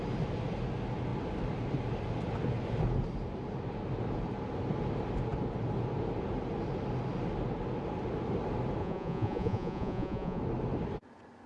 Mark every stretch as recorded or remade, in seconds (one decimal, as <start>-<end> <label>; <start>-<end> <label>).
0.0-8.8 recorded; 8.8-10.4 remade; 10.4-11.5 recorded